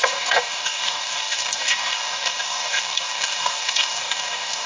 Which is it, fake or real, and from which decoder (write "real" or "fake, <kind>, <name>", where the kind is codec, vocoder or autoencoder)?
fake, codec, DAC